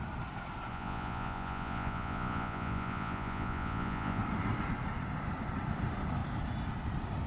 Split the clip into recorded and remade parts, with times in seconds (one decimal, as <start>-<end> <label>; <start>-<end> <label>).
0.0-0.7 recorded; 0.7-4.2 remade; 4.2-7.3 recorded